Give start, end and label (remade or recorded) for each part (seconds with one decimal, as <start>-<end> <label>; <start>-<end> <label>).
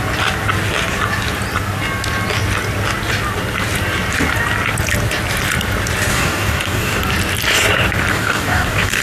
0.0-6.1 recorded; 6.1-7.0 remade; 7.0-8.1 recorded; 8.1-9.0 remade